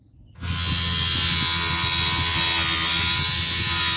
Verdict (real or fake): real